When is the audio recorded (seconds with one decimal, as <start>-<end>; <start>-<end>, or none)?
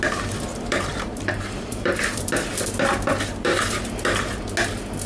0.0-0.5; 2.3-3.1; 3.8-5.1